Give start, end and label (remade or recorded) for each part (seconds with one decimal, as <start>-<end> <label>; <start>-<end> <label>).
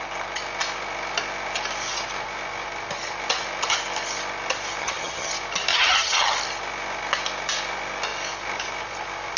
0.0-4.8 recorded; 4.8-5.3 remade; 5.3-5.7 recorded; 5.7-6.3 remade; 6.3-9.4 recorded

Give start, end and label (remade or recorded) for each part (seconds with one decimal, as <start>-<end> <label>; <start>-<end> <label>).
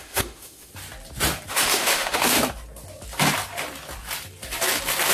0.0-0.7 remade; 0.7-1.5 recorded; 1.5-2.4 remade; 2.4-5.1 recorded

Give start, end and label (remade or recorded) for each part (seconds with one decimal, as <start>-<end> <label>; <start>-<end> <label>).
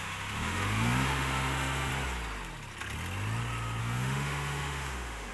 0.0-1.9 remade; 1.9-3.8 recorded; 3.8-5.3 remade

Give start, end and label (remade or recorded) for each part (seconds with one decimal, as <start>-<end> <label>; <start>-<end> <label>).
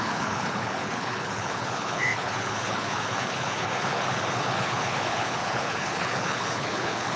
0.0-7.2 remade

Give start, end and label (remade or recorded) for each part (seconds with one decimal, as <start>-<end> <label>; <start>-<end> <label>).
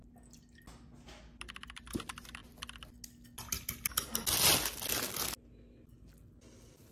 0.0-6.9 recorded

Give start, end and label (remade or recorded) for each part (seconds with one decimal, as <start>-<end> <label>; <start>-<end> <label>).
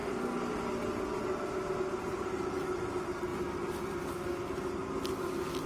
0.0-5.7 recorded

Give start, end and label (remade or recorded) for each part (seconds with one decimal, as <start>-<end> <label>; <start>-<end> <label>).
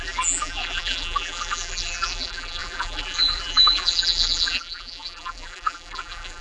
0.0-6.4 remade